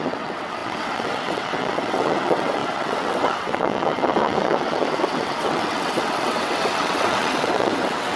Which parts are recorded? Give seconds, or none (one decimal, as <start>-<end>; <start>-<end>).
none